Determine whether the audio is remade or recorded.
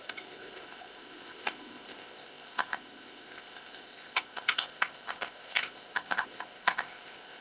remade